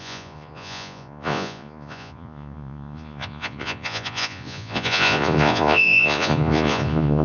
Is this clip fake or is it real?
fake